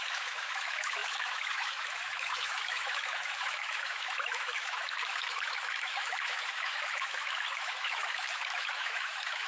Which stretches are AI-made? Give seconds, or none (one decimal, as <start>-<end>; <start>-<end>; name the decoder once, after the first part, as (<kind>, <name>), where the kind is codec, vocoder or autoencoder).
0.0-9.5 (autoencoder, DAC-VAE)